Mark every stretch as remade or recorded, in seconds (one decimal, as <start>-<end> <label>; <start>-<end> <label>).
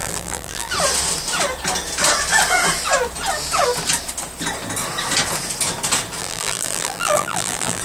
0.0-0.7 remade; 0.7-6.2 recorded; 6.2-7.8 remade